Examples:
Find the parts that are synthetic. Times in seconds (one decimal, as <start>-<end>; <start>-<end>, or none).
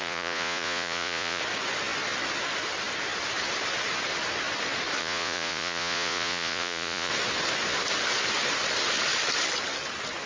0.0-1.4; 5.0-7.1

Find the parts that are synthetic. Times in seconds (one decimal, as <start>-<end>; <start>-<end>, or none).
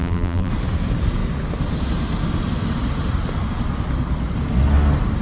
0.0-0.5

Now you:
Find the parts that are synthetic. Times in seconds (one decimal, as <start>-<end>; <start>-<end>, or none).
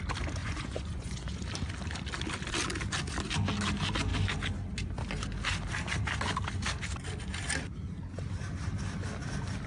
0.4-1.4